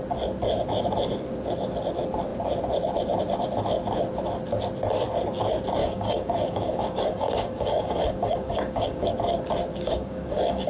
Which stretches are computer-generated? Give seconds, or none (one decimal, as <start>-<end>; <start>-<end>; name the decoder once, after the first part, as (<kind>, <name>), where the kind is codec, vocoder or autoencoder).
5.8-9.1 (codec, DAC); 9.7-10.7